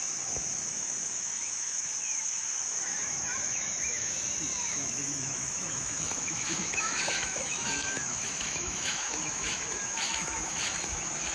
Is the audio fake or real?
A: fake